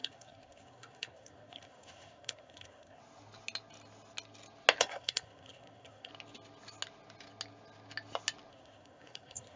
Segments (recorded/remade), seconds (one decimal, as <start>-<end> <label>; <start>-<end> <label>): 0.0-3.0 remade; 3.0-4.8 recorded; 4.8-6.1 remade; 6.1-8.5 recorded; 8.5-9.6 remade